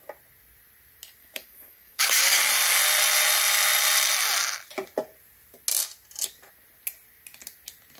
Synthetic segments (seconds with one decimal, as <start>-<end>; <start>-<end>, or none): 1.2-2.4